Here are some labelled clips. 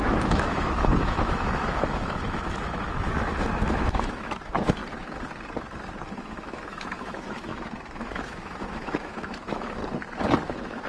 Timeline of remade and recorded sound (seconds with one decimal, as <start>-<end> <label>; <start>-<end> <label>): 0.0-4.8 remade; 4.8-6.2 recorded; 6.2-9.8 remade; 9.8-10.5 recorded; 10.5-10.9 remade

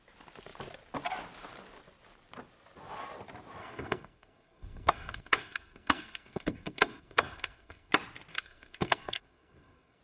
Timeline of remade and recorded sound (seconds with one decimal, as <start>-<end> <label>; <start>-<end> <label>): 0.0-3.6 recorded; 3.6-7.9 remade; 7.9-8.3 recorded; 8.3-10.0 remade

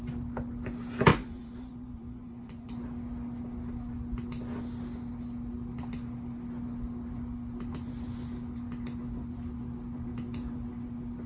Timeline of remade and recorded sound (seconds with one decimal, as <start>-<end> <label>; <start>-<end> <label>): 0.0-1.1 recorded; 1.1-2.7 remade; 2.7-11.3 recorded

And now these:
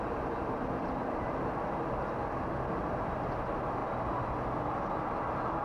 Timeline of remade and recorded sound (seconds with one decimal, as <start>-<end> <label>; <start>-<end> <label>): 0.0-5.6 recorded

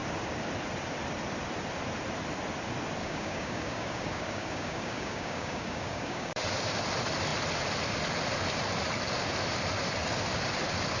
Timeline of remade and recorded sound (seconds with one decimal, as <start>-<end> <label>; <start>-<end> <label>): 0.0-3.0 recorded; 3.0-6.4 remade; 6.4-11.0 recorded

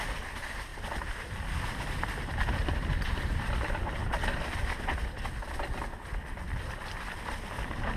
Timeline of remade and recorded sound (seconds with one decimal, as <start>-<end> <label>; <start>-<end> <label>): 0.0-2.6 recorded; 2.6-3.1 remade; 3.1-8.0 recorded